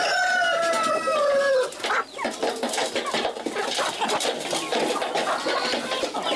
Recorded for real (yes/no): yes